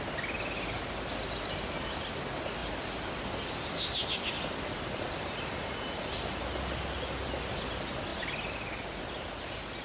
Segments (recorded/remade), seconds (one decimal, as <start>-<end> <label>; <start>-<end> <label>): 0.0-9.8 recorded